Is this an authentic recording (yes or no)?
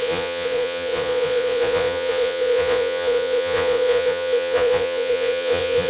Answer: no